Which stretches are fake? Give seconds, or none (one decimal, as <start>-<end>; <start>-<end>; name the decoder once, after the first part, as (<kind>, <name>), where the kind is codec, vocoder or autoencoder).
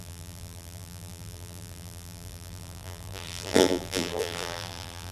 0.0-5.1 (vocoder, BigVGAN v2)